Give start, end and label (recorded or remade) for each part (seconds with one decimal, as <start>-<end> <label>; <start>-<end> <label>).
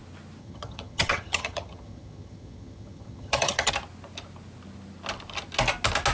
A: 0.0-0.4 recorded; 0.4-3.7 remade; 3.7-6.1 recorded